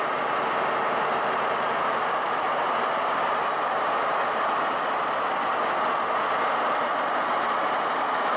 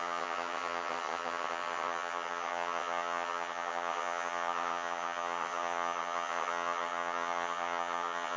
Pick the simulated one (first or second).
second